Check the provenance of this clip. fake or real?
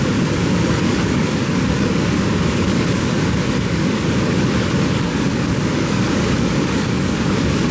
fake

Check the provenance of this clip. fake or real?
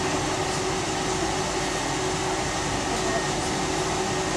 real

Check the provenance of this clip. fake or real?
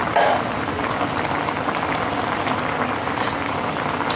real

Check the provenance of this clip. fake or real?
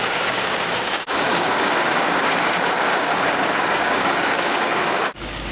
fake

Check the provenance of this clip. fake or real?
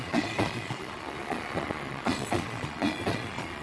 fake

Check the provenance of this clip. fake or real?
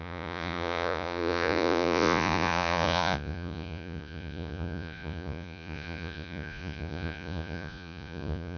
fake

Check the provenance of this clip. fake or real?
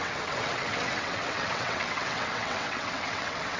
fake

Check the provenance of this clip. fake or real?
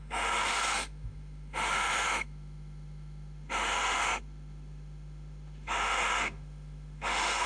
fake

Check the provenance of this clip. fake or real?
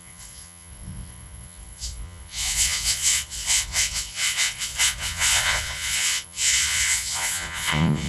fake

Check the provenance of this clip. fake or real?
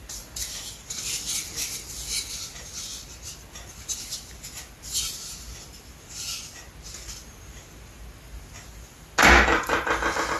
real